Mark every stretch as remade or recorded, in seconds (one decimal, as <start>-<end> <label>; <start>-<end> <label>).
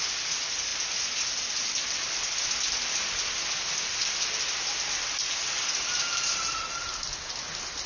0.0-7.9 recorded